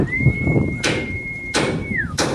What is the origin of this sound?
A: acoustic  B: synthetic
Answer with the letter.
B